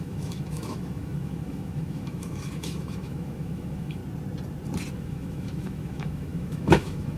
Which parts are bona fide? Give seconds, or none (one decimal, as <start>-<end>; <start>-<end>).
4.0-4.9